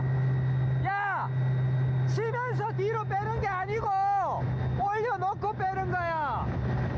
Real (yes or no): yes